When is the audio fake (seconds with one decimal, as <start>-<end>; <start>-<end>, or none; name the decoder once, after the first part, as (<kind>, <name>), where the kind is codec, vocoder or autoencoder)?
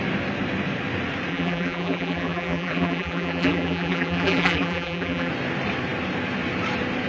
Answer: 1.3-5.3 (vocoder, BigVGAN v2)